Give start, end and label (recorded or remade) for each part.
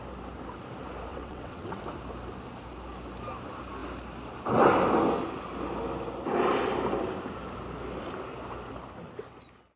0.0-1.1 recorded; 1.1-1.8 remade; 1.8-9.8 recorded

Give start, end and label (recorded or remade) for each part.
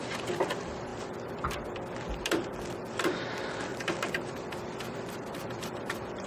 0.0-0.9 remade; 0.9-2.0 recorded; 2.0-6.3 remade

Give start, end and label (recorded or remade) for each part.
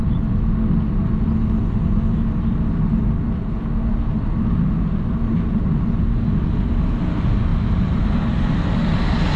0.0-9.4 recorded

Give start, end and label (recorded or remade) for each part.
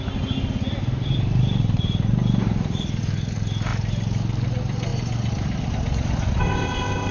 0.0-6.4 recorded; 6.4-7.1 remade